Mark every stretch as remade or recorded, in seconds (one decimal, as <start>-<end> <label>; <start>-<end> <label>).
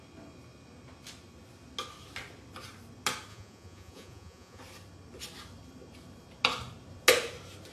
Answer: 0.0-3.3 recorded; 3.3-4.6 remade; 4.6-7.7 recorded